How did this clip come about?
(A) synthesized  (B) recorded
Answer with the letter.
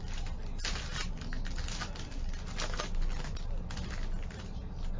B